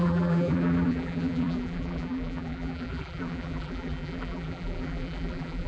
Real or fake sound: fake